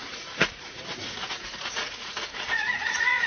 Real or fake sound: fake